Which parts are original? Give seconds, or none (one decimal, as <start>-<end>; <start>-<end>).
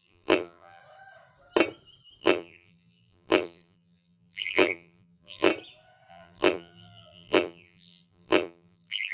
0.8-2.2; 5.5-6.1